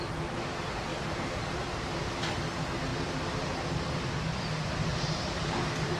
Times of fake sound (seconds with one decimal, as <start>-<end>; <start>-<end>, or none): 0.9-2.0; 4.9-6.0